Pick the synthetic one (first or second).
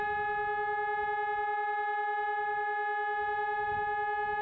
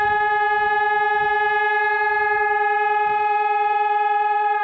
second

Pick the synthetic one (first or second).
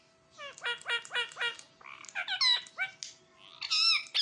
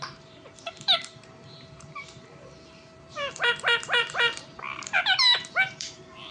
second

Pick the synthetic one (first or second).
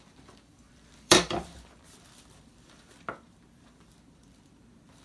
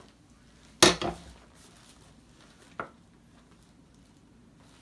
first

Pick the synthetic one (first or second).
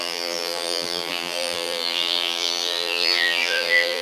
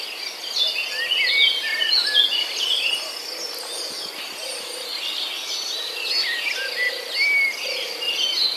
first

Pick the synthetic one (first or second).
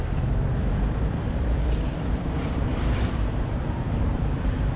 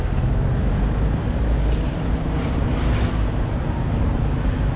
first